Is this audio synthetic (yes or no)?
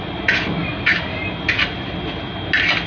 no